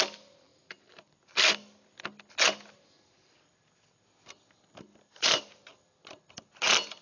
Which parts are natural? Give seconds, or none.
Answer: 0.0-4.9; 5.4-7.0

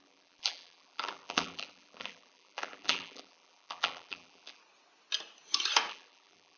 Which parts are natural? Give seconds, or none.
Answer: 4.6-5.9

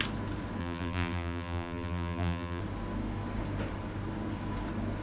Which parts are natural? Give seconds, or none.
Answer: 0.0-0.6; 2.6-5.0

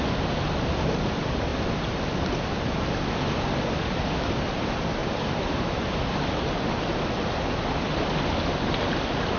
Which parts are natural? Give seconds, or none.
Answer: 0.0-5.0; 5.8-9.4

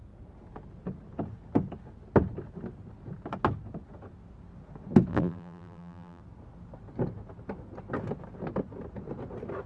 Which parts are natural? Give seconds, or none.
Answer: 0.0-5.1; 6.2-9.7

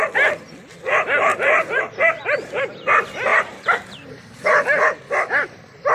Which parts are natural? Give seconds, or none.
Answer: 0.0-1.3; 2.6-3.3; 4.8-5.9

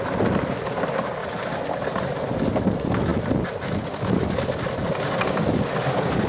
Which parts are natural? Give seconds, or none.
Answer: 0.0-1.2; 1.8-6.3

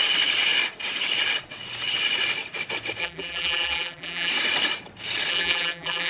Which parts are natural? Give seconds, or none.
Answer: 0.0-3.0; 4.3-5.3